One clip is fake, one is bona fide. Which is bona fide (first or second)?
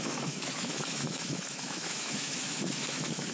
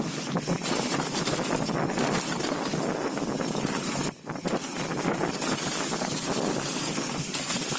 second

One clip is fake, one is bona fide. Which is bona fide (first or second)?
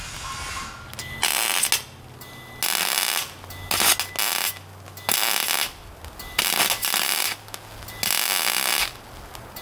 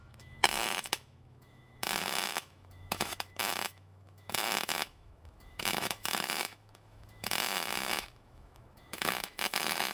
first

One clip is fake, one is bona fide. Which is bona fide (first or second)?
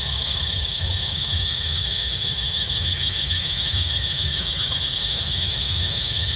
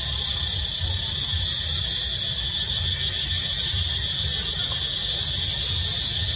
second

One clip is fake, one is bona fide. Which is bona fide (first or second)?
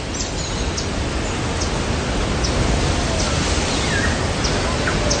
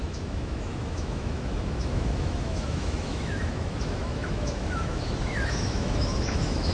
first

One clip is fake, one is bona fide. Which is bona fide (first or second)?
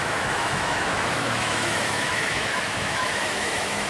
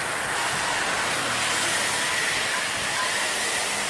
second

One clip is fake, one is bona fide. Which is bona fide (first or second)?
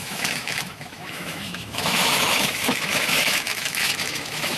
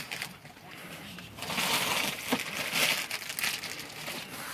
second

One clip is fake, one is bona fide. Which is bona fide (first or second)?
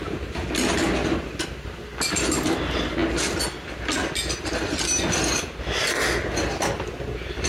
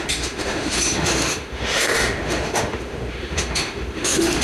first